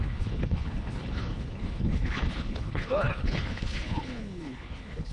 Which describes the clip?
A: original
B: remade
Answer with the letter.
B